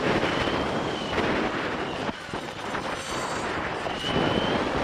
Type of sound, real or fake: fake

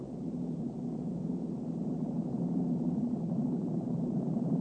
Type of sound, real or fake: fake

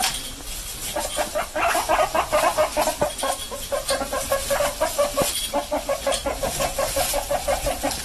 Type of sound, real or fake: real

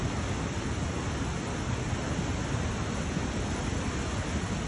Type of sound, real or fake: real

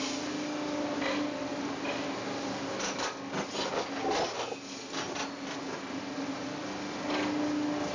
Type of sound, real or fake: real